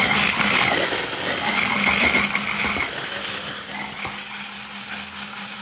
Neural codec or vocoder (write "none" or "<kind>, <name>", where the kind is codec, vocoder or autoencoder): none